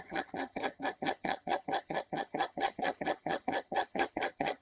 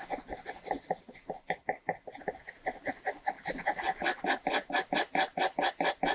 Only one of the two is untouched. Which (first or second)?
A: second